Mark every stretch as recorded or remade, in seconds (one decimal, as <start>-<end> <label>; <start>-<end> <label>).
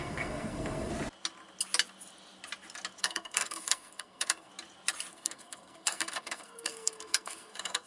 0.0-0.9 remade; 0.9-3.0 recorded; 3.0-4.5 remade; 4.5-5.1 recorded; 5.1-7.9 remade